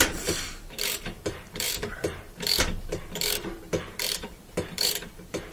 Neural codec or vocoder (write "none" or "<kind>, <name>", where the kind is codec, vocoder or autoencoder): vocoder, BigVGAN v2